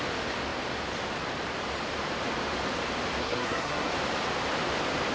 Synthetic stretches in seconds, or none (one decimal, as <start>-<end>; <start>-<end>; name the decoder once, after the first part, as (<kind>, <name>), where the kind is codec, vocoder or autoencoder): 3.2-3.9 (codec, SNAC)